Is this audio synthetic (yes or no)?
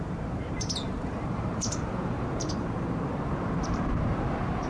yes